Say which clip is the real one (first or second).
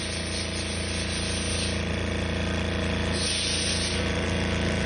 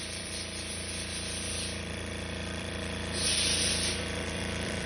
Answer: first